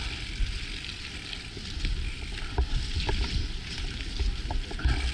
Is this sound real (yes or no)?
yes